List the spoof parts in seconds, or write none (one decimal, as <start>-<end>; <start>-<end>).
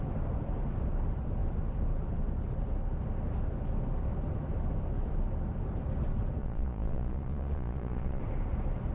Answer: 6.4-8.2